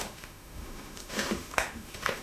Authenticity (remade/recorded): remade